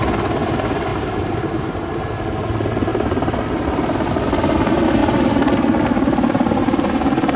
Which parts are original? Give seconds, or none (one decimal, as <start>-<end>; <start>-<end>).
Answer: 0.0-0.9; 2.2-2.9; 4.1-5.0